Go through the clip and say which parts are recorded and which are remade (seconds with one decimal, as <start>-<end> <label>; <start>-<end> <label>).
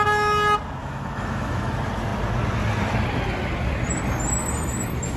0.0-0.8 recorded; 0.8-1.7 remade; 1.7-5.2 recorded